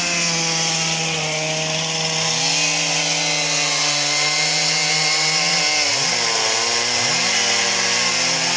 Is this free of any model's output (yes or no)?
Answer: yes